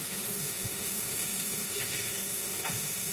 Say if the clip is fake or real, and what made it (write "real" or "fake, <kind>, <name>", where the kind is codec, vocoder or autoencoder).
fake, autoencoder, DAC-VAE